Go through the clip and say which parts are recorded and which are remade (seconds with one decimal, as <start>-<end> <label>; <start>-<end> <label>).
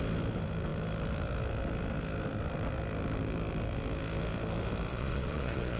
0.0-4.9 recorded; 4.9-5.8 remade